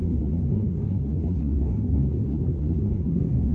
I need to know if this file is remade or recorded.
remade